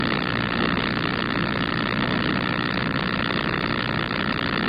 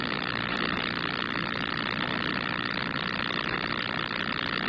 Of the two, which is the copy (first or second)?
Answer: second